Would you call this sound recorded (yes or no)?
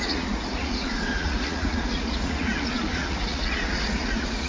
no